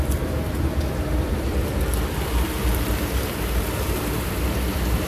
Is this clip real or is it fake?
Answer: fake